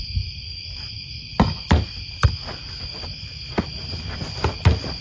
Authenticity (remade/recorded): recorded